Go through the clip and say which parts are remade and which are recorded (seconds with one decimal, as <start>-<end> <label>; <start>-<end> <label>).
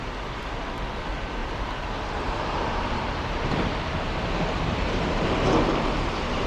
0.0-1.4 recorded; 1.4-4.7 remade; 4.7-6.5 recorded